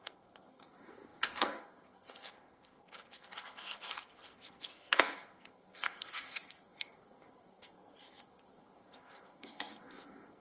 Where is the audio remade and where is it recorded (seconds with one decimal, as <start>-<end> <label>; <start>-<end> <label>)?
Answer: 0.0-10.4 remade